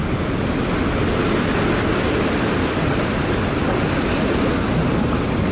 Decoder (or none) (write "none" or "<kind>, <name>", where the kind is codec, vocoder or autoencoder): none